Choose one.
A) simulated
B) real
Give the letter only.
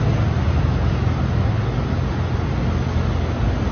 B